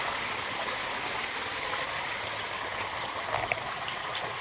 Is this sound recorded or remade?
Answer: recorded